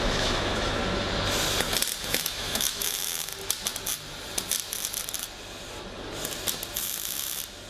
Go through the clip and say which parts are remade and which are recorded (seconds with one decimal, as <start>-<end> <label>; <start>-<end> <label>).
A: 0.0-0.8 remade; 0.8-2.0 recorded; 2.0-3.3 remade; 3.3-7.7 recorded